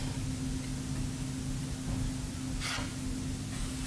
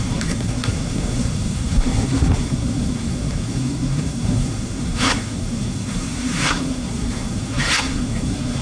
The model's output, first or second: second